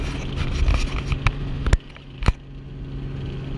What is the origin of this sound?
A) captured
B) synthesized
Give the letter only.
A